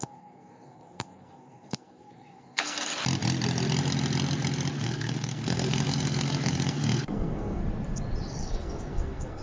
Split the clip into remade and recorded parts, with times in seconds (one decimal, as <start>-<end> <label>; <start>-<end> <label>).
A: 0.0-2.9 remade; 2.9-4.8 recorded; 4.8-7.6 remade; 7.6-8.3 recorded; 8.3-9.4 remade

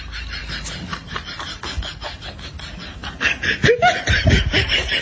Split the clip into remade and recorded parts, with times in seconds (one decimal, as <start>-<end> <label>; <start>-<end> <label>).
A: 0.0-5.0 recorded

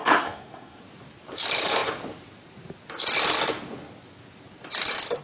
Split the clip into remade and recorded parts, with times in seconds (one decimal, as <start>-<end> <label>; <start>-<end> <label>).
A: 0.0-0.8 remade; 0.8-5.2 recorded

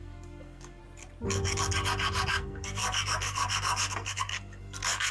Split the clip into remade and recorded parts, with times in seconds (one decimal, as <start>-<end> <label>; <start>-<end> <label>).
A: 0.0-0.8 remade; 0.8-2.3 recorded; 2.3-5.1 remade